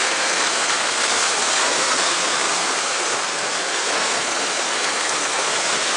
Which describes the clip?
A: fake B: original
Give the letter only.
A